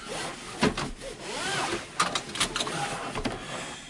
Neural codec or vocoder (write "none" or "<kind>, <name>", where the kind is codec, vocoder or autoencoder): none